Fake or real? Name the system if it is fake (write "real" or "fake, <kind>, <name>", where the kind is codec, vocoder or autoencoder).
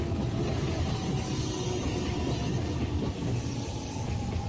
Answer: real